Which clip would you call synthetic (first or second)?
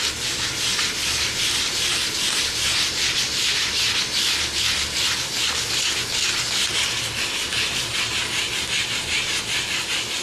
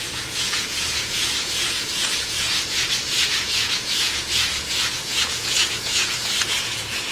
second